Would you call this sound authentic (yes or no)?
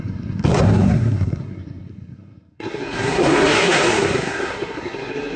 no